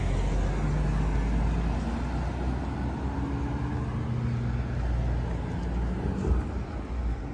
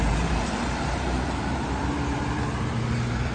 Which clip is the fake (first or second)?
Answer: second